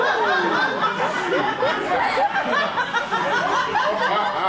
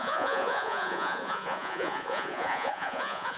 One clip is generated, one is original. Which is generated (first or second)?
second